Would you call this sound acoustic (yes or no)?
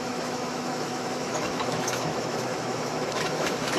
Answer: no